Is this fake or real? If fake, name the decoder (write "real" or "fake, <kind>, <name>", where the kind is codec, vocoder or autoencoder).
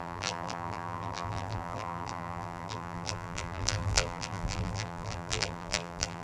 fake, vocoder, BigVGAN v2